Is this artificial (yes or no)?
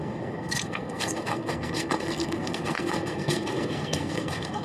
yes